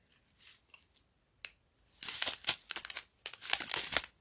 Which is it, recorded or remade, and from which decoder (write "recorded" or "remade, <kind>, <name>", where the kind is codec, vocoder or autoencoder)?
recorded